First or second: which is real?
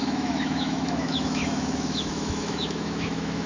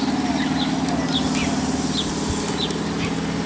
second